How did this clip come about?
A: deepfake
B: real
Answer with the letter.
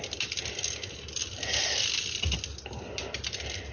B